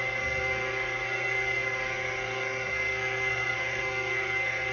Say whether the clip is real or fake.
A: fake